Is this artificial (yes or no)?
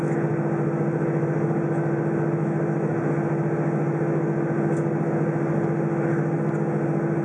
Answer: no